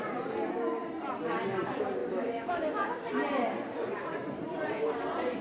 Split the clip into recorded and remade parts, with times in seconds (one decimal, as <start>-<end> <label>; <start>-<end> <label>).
0.0-2.0 recorded; 2.0-3.1 remade; 3.1-5.4 recorded